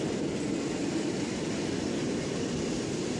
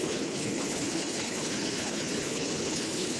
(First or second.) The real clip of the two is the first